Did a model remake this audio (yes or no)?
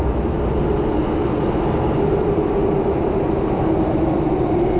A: no